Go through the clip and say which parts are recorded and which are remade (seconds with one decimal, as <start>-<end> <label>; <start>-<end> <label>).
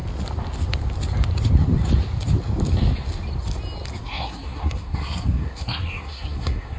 0.0-4.0 recorded; 4.0-6.8 remade